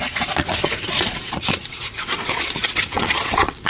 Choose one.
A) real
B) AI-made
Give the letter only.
B